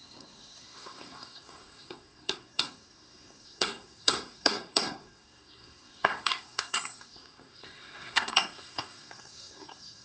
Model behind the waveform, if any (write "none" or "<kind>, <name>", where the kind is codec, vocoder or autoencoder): codec, SNAC